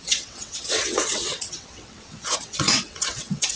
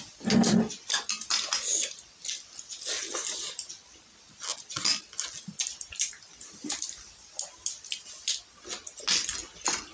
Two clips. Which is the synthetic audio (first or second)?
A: first